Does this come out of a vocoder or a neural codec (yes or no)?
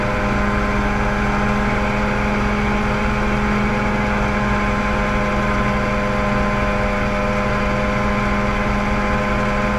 no